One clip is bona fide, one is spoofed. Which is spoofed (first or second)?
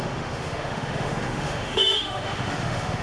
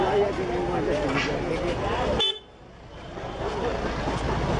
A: first